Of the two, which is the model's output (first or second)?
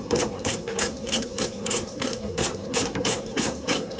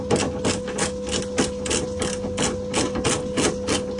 first